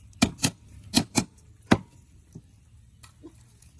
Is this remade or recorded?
recorded